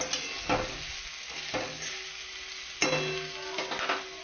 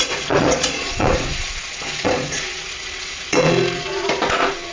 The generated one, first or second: second